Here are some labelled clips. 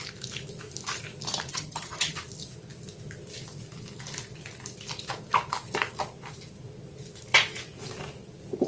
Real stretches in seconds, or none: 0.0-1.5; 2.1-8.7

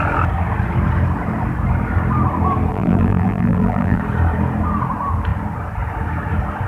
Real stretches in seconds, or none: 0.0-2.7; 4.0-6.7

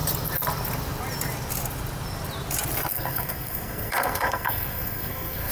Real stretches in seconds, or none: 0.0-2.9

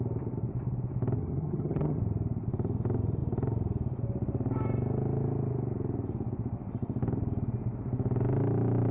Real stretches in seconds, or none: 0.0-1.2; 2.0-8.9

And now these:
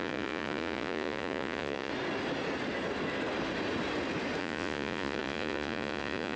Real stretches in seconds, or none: 1.9-4.4

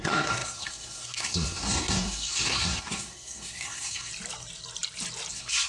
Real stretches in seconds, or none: 4.1-5.3